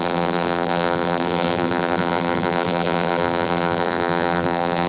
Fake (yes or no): yes